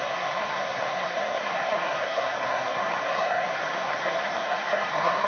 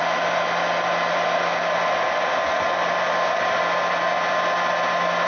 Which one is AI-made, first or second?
first